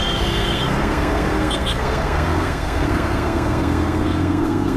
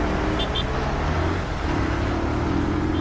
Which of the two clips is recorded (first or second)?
second